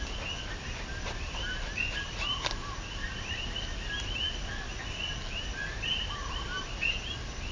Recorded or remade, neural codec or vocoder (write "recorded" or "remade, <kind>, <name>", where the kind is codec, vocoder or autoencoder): recorded